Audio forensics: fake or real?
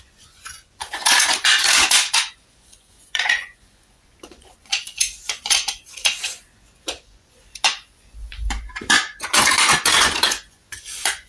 fake